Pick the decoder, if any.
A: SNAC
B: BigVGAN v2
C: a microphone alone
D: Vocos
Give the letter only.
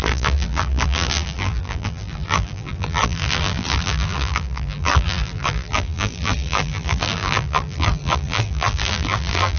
B